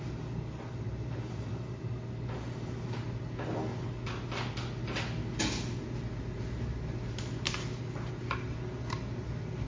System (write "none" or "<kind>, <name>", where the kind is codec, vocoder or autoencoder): none